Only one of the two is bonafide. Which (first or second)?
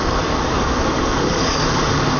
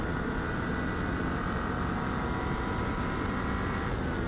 second